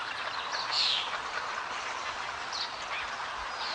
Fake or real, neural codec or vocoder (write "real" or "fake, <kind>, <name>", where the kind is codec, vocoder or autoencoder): real